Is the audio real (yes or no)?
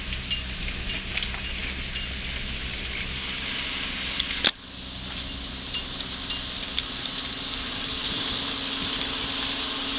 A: yes